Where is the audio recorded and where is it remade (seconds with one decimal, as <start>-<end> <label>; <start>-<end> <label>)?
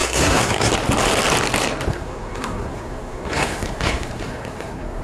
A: 0.0-0.7 remade; 0.7-1.9 recorded; 1.9-5.0 remade